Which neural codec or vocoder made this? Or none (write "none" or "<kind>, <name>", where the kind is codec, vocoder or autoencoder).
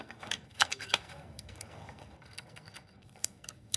codec, SNAC